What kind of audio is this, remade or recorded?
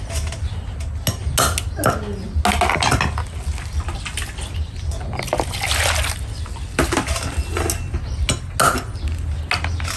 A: recorded